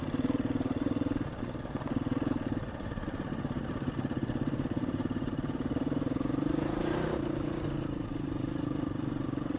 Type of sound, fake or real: fake